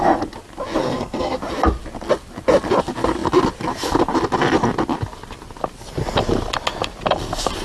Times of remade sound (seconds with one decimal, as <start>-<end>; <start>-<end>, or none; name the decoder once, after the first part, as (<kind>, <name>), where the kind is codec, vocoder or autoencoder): 0.8-1.4 (codec, SNAC)